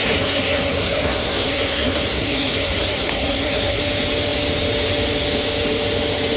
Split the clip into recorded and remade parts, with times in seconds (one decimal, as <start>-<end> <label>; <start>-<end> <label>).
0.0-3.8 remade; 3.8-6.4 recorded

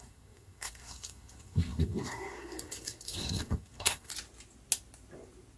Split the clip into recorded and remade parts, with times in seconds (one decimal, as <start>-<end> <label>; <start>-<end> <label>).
0.0-4.1 remade; 4.1-5.6 recorded

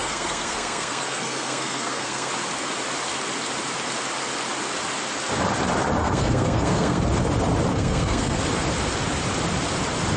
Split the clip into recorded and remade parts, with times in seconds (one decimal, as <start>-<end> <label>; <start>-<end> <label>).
0.0-2.3 remade; 2.3-6.0 recorded; 6.0-7.0 remade; 7.0-7.7 recorded; 7.7-8.4 remade; 8.4-10.2 recorded

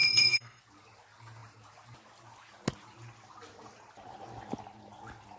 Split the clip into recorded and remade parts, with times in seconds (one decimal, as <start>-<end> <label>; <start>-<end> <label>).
0.0-0.6 remade; 0.6-5.4 recorded

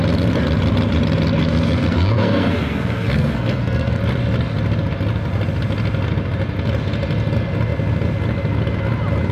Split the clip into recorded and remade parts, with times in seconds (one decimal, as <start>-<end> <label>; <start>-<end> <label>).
0.0-1.4 recorded; 1.4-4.0 remade; 4.0-9.3 recorded